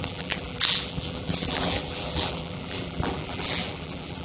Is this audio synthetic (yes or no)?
yes